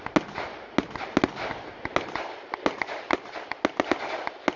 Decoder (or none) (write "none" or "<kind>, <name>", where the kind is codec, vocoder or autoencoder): none